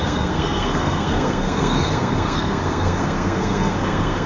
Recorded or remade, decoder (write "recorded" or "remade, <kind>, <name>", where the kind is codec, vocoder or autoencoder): remade, codec, SNAC